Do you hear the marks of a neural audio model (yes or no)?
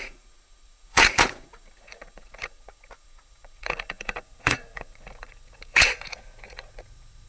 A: yes